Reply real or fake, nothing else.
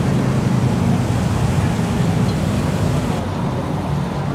real